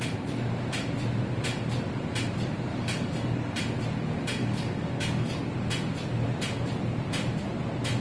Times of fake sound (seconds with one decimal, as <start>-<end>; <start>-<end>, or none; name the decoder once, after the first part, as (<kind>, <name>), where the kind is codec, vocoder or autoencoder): 2.7-3.5 (codec, DAC); 4.4-5.4